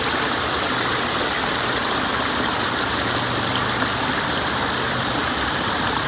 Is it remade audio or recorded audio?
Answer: recorded